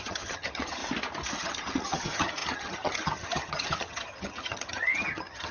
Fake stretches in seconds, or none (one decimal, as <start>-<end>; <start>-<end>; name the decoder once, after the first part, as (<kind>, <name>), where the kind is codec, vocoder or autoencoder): 0.0-0.8 (vocoder, HiFi-GAN); 1.4-5.5